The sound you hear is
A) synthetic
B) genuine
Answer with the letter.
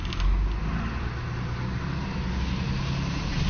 B